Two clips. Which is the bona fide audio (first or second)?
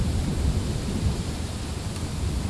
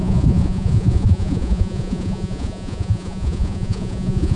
first